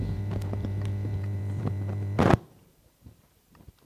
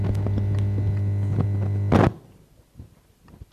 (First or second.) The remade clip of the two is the first